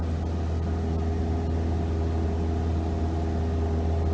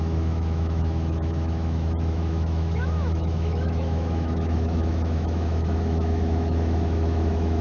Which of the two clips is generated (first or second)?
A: second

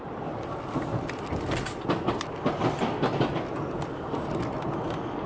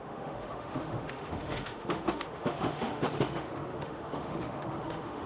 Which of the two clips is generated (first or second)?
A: second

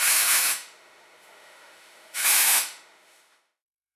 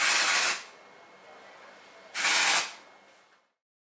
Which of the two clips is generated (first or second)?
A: first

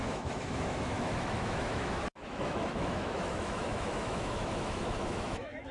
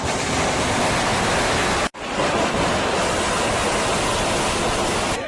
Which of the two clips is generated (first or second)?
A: first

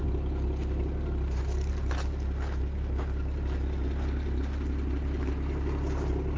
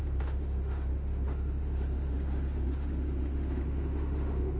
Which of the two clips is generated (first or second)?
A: second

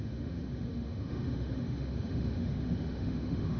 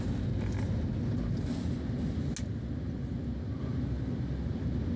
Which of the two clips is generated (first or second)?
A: first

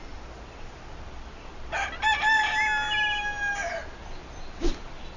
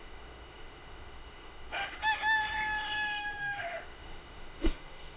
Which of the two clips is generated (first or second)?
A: second